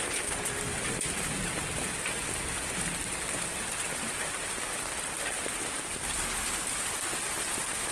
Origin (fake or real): real